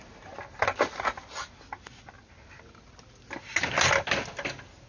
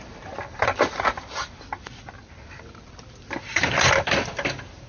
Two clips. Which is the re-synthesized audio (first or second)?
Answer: second